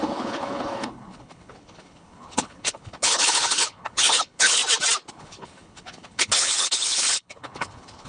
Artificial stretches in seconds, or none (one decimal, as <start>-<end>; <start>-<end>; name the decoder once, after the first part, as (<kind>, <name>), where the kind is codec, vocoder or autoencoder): 0.0-4.6 (codec, HILCodec); 5.1-8.1